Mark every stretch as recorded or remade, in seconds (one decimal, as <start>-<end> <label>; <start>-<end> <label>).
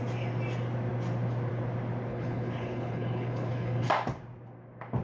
0.0-2.1 recorded; 2.1-3.9 remade; 3.9-5.0 recorded